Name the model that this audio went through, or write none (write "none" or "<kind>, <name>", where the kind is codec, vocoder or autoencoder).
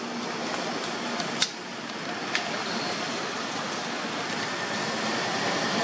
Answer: none